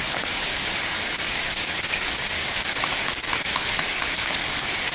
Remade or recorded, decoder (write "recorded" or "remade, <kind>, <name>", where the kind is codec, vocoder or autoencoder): remade, codec, DAC